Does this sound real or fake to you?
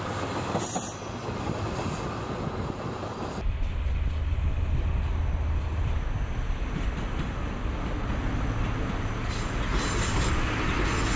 real